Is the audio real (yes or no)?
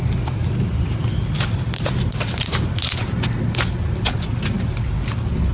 yes